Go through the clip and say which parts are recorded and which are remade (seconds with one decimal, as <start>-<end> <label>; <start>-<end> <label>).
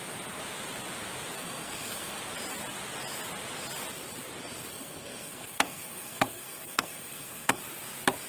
0.0-1.4 recorded; 1.4-2.2 remade; 2.2-4.7 recorded; 4.7-7.6 remade; 7.6-8.3 recorded